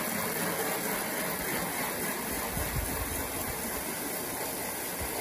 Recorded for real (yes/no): yes